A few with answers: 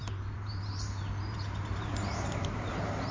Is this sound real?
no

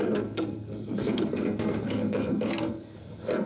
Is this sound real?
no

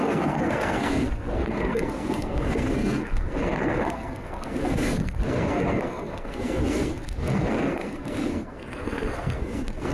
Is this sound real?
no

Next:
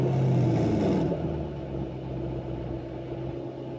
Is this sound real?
yes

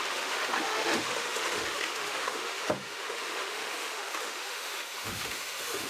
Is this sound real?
no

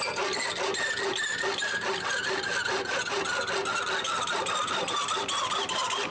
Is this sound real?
yes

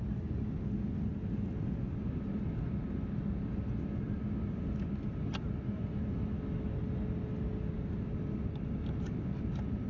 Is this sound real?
yes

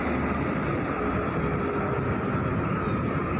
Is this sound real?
yes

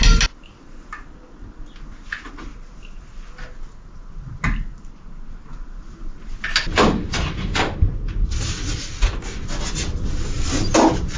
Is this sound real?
yes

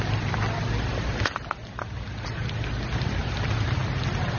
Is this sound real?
yes